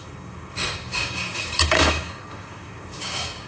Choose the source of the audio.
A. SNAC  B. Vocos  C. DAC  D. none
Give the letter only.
C